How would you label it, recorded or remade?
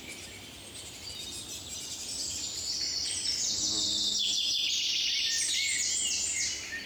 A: recorded